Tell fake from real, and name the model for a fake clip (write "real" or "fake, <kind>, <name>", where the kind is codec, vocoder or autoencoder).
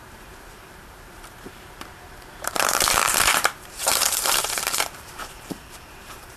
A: fake, vocoder, BigVGAN v2